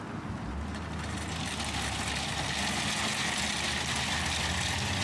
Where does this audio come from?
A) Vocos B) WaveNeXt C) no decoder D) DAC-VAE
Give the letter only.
C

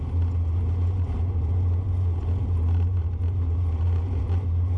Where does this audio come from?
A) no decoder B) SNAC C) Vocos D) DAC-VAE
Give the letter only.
A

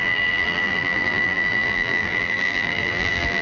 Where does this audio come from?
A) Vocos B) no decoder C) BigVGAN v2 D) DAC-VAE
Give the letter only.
C